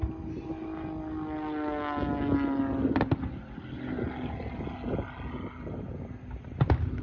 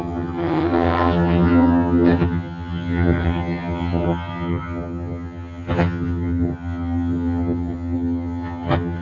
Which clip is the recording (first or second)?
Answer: first